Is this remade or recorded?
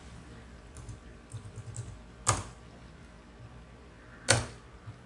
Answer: recorded